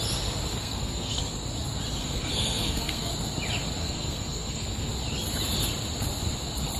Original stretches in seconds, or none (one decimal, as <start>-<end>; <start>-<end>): 0.0-0.5; 1.2-2.0; 3.1-3.8; 4.9-6.8